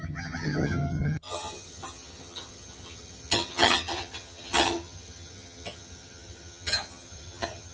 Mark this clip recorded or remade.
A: remade